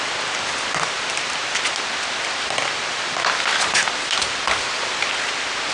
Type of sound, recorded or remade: recorded